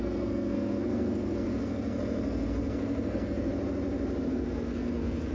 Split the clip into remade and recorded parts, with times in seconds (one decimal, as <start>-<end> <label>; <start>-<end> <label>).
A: 0.0-3.5 remade; 3.5-4.3 recorded; 4.3-5.3 remade

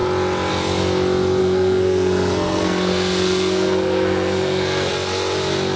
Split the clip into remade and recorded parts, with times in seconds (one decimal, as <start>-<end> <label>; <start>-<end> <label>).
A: 0.0-1.4 recorded; 1.4-4.9 remade; 4.9-5.8 recorded